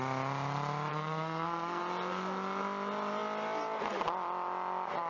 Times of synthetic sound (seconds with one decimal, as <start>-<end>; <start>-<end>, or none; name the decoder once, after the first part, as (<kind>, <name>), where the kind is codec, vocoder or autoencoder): 0.9-1.8 (codec, SNAC)